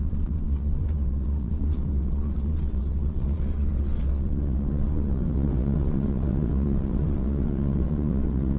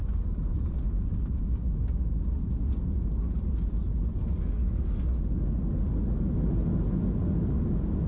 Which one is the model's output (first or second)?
first